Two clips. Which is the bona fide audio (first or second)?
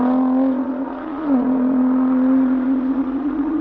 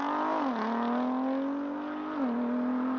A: second